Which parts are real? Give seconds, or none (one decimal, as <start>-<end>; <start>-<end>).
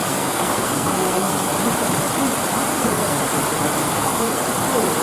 1.5-2.7; 3.2-3.8; 4.4-5.0